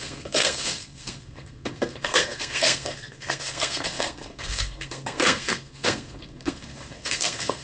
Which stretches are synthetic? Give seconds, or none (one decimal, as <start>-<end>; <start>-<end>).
0.0-7.6

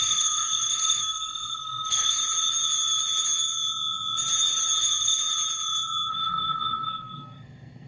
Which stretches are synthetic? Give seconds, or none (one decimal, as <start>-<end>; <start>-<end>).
0.0-2.2; 4.8-5.2; 6.1-7.9

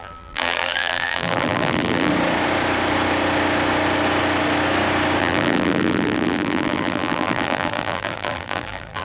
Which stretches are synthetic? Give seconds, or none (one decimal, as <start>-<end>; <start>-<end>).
0.0-2.1; 5.2-9.0

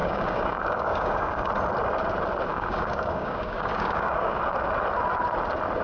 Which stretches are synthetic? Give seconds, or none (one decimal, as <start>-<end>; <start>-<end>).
0.0-1.5; 2.5-4.4

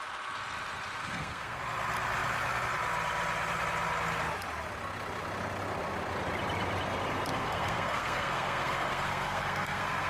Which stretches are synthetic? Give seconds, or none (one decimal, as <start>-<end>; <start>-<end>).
1.0-1.6; 7.3-10.1

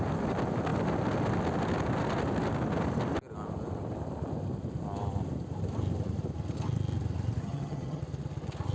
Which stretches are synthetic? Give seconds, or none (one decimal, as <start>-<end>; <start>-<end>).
7.4-8.0